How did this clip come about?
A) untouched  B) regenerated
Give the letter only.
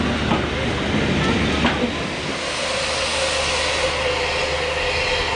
A